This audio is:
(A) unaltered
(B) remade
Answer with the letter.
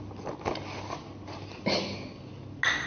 A